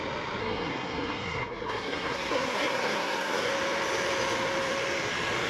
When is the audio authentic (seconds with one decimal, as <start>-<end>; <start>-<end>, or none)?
0.0-0.4; 3.5-5.5